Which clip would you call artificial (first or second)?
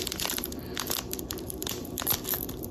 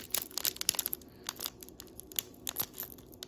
first